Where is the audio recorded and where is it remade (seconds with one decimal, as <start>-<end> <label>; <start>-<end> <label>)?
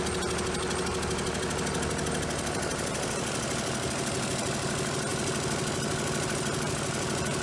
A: 0.0-7.4 recorded